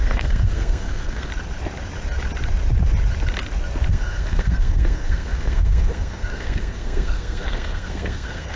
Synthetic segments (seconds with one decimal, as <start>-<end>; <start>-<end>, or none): 0.0-1.3; 3.9-8.6